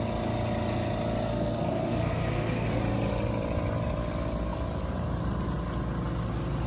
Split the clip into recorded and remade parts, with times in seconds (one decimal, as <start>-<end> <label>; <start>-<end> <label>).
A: 0.0-1.3 recorded; 1.3-2.8 remade; 2.8-6.7 recorded